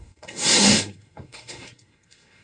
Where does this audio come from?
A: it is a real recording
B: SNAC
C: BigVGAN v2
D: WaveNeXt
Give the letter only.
B